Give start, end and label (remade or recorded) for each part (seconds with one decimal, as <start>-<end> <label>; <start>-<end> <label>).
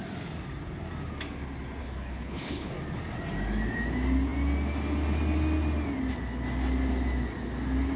0.0-1.8 recorded; 1.8-2.7 remade; 2.7-8.0 recorded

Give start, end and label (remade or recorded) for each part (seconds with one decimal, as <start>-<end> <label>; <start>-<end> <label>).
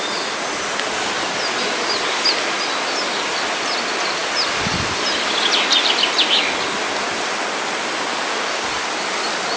0.0-9.6 recorded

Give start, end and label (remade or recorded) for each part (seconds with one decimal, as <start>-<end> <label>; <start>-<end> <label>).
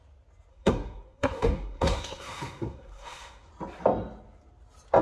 0.0-0.5 recorded; 0.5-3.5 remade; 3.5-5.0 recorded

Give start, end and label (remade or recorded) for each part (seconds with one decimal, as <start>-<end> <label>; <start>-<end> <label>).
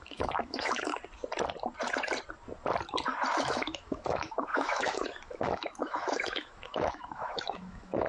0.0-0.9 remade; 0.9-3.4 recorded; 3.4-8.1 remade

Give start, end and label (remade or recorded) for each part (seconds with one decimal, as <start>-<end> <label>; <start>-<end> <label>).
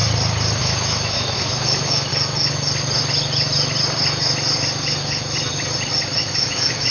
0.0-0.6 recorded; 0.6-2.1 remade; 2.1-6.2 recorded; 6.2-6.9 remade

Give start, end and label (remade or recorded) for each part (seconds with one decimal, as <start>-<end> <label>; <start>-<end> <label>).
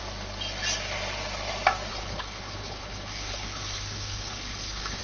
0.0-1.9 recorded; 1.9-5.0 remade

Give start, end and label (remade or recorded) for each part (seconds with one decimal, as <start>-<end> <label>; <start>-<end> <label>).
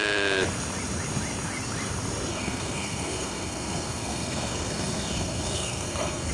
0.0-2.3 recorded; 2.3-6.3 remade